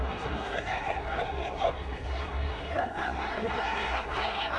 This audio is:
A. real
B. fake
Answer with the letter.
B